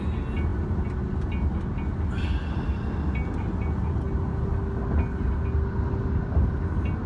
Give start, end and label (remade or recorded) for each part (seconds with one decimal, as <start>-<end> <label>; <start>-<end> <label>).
0.0-7.1 recorded

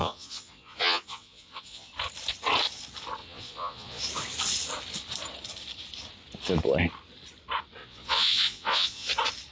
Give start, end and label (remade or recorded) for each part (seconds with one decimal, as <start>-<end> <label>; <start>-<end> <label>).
0.0-1.9 remade; 1.9-3.2 recorded; 3.2-4.0 remade; 4.0-7.8 recorded; 7.8-9.1 remade; 9.1-9.5 recorded

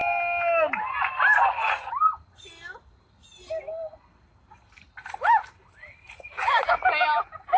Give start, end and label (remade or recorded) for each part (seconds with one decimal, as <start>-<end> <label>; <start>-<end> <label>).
0.0-7.6 recorded

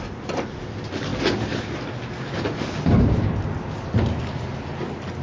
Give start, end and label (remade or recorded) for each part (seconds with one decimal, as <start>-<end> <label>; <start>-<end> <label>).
0.0-5.2 recorded

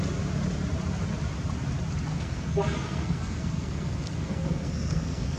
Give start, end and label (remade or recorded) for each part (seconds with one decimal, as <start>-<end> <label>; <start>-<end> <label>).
0.0-2.1 recorded; 2.1-5.4 remade

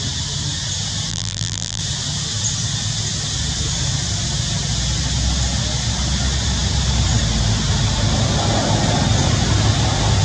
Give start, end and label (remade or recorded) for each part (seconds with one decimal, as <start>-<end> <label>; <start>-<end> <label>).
0.0-1.1 recorded; 1.1-1.8 remade; 1.8-10.2 recorded

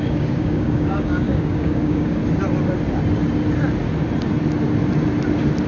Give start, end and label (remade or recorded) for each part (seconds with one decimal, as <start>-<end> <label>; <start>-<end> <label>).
0.0-2.2 remade; 2.2-5.7 recorded